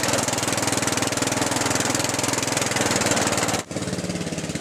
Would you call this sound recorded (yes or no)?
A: yes